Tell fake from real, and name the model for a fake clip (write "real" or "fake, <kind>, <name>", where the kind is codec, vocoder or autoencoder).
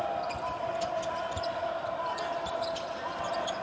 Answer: real